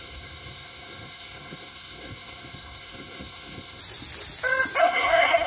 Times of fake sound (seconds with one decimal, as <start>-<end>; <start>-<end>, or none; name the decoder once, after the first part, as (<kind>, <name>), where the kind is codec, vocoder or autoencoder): 0.0-3.8 (codec, SNAC); 4.8-5.5